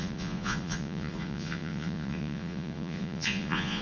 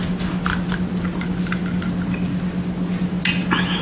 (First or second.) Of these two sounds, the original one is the second